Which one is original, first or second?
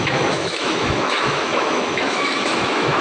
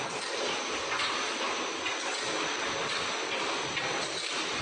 second